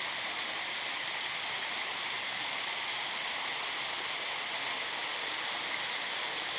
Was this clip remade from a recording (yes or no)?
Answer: no